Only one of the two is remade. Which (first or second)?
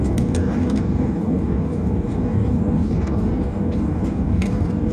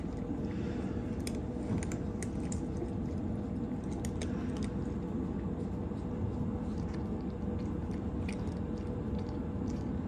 first